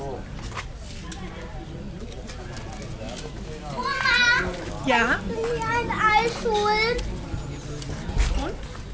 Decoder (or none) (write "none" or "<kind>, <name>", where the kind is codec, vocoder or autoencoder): none